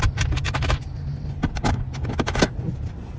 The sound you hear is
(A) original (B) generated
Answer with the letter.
A